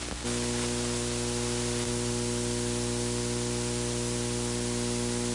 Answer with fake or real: real